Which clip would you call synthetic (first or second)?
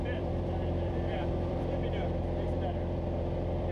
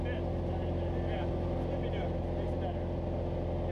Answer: first